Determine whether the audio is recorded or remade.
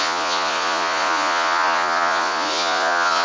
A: remade